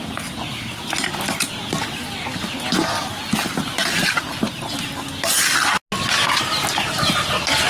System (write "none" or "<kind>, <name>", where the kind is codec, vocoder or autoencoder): none